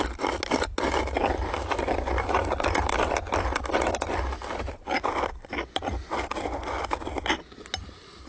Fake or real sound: real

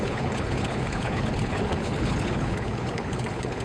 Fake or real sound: fake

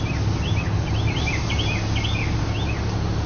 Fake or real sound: real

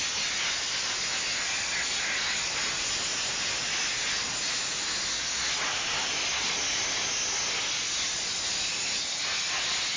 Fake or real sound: real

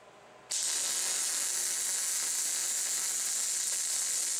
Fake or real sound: real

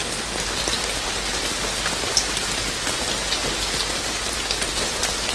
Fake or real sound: real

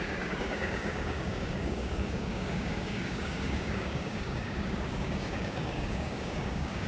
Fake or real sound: fake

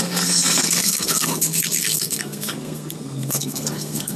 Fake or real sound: fake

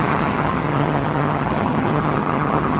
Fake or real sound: fake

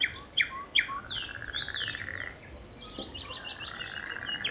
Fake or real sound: real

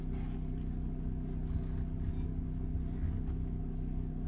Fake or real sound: real